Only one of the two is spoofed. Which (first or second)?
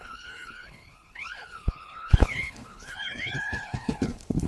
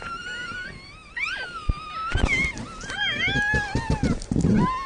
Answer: first